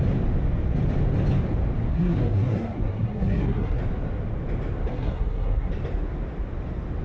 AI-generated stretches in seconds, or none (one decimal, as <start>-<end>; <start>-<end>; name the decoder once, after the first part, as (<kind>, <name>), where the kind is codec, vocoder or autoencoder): 1.9-3.8 (codec, SNAC); 4.9-5.7